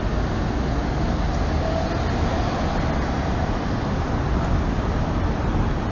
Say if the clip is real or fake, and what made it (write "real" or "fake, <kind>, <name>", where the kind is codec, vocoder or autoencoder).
real